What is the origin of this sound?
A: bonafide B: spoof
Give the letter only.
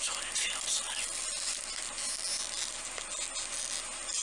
A